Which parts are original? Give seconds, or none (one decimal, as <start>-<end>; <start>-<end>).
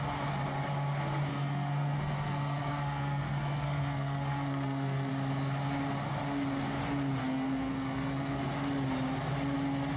0.0-1.3; 5.1-7.2; 8.4-10.0